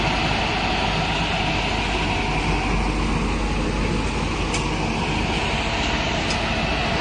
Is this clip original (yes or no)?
yes